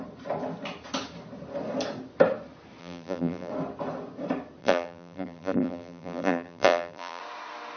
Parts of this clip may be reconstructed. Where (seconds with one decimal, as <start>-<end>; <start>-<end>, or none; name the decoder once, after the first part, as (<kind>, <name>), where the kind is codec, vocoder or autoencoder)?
2.8-3.5 (vocoder, BigVGAN v2); 4.6-7.2